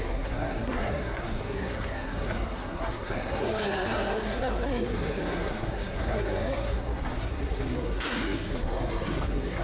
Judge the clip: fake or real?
fake